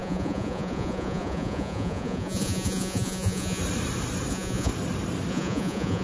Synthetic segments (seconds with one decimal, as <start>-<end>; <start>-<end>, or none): 0.0-3.6; 4.3-4.7; 5.3-6.0